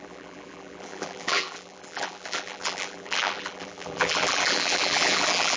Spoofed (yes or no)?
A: yes